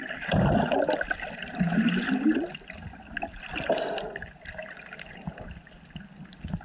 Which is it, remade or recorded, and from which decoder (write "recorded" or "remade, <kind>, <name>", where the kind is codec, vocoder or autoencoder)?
recorded